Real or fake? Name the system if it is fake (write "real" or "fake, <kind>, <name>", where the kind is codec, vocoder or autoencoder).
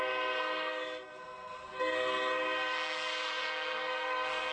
fake, codec, SNAC